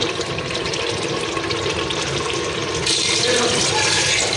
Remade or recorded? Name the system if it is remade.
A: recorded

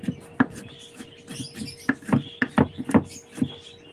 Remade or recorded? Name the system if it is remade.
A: recorded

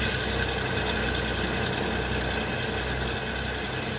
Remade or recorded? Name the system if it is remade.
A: recorded